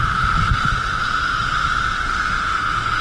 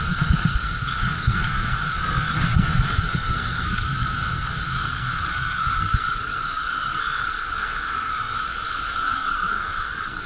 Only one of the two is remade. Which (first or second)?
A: second